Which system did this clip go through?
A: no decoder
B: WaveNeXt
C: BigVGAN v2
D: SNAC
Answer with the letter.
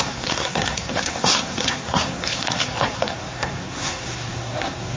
D